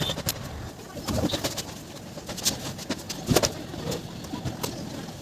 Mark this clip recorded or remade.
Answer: recorded